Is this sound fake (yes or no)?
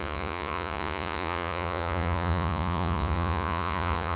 yes